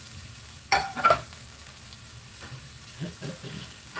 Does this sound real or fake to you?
fake